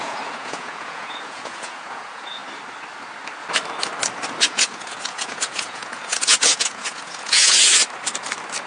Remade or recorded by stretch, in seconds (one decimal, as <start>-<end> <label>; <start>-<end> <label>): 0.0-2.4 remade; 2.4-4.4 recorded; 4.4-7.8 remade; 7.8-8.7 recorded

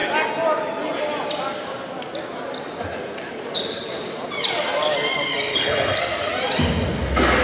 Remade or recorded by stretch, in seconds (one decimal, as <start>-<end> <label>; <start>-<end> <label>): 0.0-5.5 recorded; 5.5-6.0 remade; 6.0-7.4 recorded

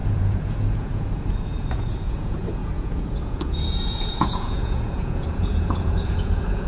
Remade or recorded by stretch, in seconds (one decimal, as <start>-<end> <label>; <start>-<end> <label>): 0.0-6.7 remade

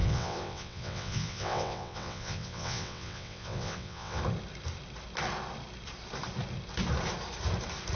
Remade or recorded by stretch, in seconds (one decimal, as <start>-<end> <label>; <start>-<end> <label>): 0.0-4.2 remade; 4.2-8.0 recorded

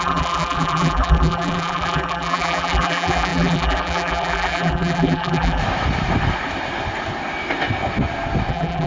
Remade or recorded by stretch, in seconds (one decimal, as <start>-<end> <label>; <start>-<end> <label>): 0.0-5.6 remade; 5.6-8.5 recorded; 8.5-8.9 remade